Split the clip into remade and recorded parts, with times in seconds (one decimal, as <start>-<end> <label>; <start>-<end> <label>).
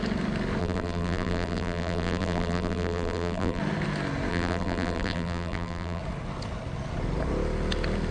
0.0-0.6 recorded; 0.6-3.6 remade; 3.6-4.3 recorded; 4.3-6.0 remade; 6.0-8.1 recorded